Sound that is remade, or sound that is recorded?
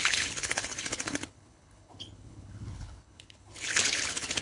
remade